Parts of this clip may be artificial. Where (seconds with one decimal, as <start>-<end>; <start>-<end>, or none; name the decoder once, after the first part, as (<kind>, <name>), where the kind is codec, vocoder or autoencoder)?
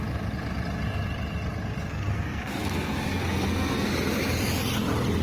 1.9-3.9 (codec, SNAC)